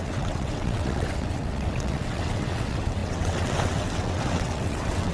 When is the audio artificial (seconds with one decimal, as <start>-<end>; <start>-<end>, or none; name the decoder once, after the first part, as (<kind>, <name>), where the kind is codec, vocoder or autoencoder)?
0.0-5.1 (vocoder, WaveNeXt)